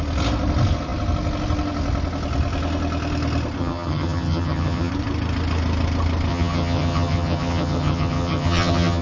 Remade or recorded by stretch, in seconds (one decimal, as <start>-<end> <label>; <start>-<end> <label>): 0.0-3.6 recorded; 3.6-4.9 remade; 4.9-6.3 recorded; 6.3-9.0 remade

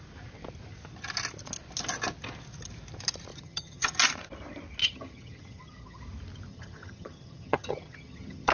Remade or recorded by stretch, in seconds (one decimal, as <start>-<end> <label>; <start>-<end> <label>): 0.0-3.3 recorded; 3.3-3.9 remade; 3.9-4.8 recorded; 4.8-6.0 remade; 6.0-6.5 recorded; 6.5-8.5 remade